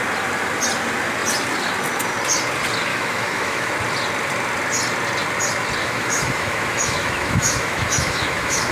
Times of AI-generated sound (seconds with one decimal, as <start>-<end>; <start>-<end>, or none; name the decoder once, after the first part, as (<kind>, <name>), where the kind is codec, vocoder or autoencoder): 2.9-3.7 (autoencoder, DAC-VAE); 5.8-8.7

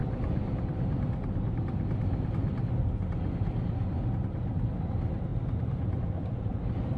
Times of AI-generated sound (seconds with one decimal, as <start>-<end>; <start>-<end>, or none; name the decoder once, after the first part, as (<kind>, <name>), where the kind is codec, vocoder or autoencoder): none

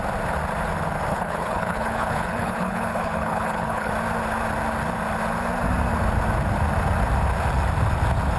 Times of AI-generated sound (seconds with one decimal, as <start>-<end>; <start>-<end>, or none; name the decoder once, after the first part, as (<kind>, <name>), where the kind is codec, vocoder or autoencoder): 1.1-3.9 (codec, HILCodec)

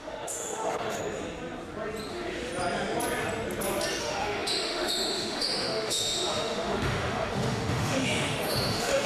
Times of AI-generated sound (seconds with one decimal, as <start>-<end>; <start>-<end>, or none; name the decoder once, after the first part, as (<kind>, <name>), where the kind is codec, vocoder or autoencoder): 0.0-1.0 (autoencoder, DAC-VAE); 2.1-2.5; 4.0-9.1

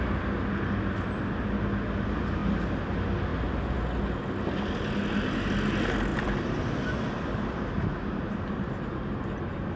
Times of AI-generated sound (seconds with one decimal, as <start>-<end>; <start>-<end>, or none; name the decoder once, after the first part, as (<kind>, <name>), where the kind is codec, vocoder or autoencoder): 6.1-6.7 (vocoder, BigVGAN v2)

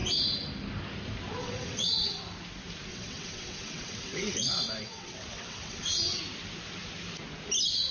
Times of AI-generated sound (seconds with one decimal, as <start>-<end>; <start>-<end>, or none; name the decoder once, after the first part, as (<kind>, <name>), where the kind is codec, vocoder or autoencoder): 1.4-2.2 (vocoder, WaveNeXt); 2.9-6.2